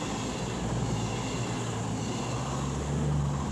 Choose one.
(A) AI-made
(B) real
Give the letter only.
B